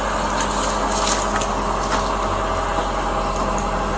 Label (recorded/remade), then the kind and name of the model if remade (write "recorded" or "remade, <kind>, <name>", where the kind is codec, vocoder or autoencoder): recorded